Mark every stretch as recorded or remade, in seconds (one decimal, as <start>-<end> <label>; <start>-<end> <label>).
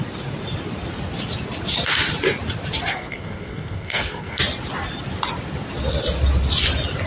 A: 0.0-2.9 recorded; 2.9-4.4 remade; 4.4-7.1 recorded